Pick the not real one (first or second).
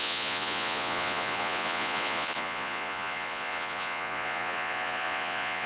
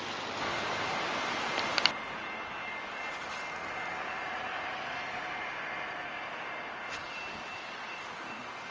first